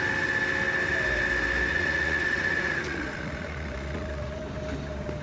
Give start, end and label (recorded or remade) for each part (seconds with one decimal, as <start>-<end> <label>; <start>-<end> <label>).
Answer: 0.0-1.7 recorded; 1.7-4.4 remade; 4.4-5.2 recorded